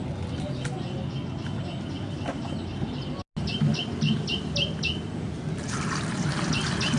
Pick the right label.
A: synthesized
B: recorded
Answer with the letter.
B